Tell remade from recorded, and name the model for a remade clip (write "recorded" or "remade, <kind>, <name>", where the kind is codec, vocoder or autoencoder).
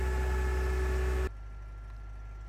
recorded